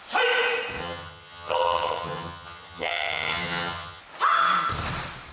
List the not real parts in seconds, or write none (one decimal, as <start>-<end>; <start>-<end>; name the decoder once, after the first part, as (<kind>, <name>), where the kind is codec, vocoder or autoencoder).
0.8-4.0 (vocoder, HiFi-GAN)